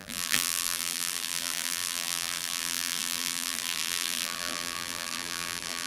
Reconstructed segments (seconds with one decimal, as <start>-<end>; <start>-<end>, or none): 0.0-5.9